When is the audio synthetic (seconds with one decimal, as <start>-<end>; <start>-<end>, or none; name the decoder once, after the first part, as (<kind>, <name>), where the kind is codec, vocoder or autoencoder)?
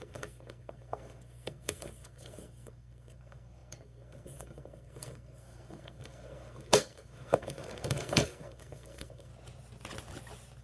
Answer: 0.0-9.3 (codec, SNAC)